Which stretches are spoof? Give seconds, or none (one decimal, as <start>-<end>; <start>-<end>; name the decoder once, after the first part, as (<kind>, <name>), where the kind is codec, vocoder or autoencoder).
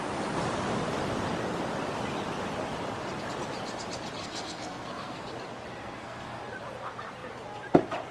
4.2-5.3 (codec, SNAC); 5.8-6.4